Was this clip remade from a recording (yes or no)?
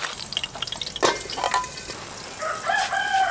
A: no